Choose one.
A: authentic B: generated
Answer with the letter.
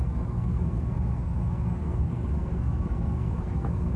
B